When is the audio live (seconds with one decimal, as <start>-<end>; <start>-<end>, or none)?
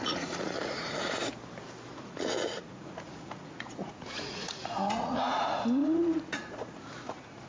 1.4-1.9